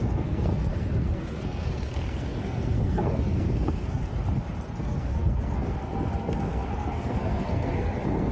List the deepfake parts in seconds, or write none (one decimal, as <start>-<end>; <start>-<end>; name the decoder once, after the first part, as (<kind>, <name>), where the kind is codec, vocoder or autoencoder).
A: 0.0-4.0 (codec, SNAC); 4.8-8.3